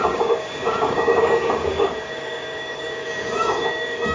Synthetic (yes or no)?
yes